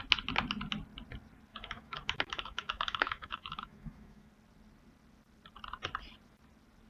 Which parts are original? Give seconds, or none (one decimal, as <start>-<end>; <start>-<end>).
0.0-1.5; 4.3-6.9